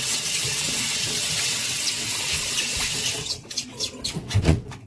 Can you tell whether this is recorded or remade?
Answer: remade